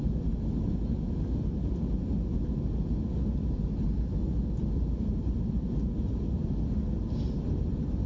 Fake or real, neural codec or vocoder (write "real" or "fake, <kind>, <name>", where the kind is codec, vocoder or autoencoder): real